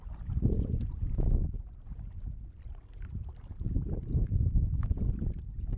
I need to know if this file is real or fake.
real